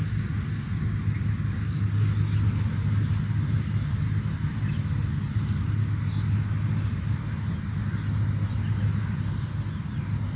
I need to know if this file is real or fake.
real